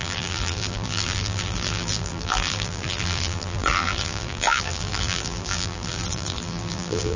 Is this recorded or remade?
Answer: remade